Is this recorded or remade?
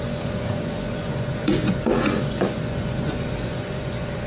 remade